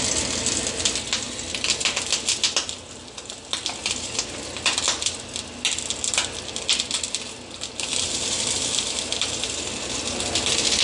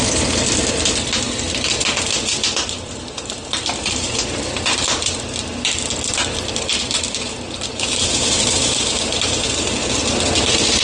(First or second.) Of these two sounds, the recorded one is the first